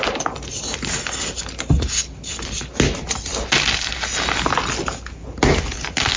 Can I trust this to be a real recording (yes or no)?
yes